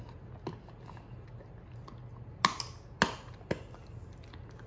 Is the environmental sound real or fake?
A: real